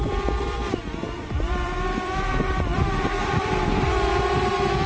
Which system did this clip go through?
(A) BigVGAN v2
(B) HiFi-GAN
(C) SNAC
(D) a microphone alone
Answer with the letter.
A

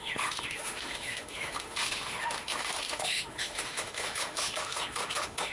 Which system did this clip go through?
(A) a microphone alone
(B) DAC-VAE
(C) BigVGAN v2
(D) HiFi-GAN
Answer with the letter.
B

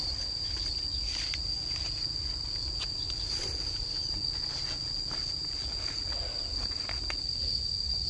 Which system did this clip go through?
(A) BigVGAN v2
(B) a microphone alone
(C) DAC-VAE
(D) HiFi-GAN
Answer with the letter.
B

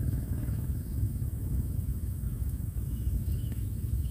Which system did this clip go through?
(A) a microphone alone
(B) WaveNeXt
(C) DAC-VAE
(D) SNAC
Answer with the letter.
C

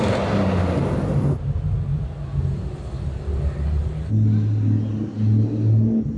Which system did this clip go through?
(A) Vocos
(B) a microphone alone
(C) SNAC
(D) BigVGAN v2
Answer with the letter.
B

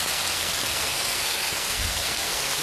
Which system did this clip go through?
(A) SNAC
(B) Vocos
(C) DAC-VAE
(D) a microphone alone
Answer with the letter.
A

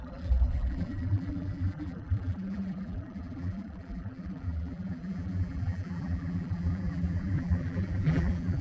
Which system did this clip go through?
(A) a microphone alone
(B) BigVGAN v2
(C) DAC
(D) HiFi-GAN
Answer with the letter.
B